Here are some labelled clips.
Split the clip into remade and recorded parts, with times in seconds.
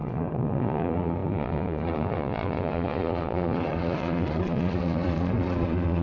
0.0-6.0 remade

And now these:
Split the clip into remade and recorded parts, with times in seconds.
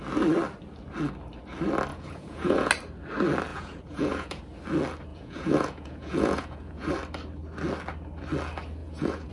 0.0-1.9 recorded; 1.9-2.7 remade; 2.7-3.5 recorded; 3.5-4.4 remade; 4.4-5.1 recorded; 5.1-6.9 remade; 6.9-8.8 recorded; 8.8-9.3 remade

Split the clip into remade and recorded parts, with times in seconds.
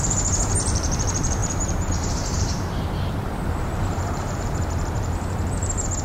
0.0-6.0 remade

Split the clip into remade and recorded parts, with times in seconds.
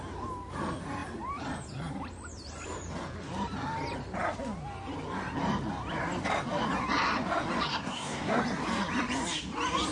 0.0-7.7 recorded; 7.7-8.4 remade; 8.4-9.9 recorded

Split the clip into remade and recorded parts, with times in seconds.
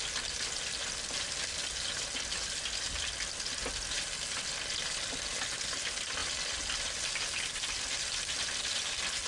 0.0-6.2 recorded; 6.2-8.1 remade; 8.1-9.3 recorded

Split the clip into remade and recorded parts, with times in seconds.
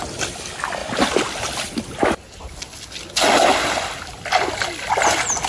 0.0-5.5 recorded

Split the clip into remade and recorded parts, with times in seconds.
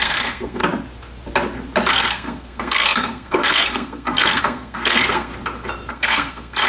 0.0-0.6 remade; 0.6-1.9 recorded; 1.9-5.3 remade; 5.3-5.9 recorded; 5.9-6.7 remade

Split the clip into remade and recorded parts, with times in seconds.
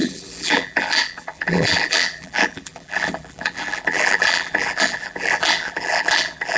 0.0-6.6 remade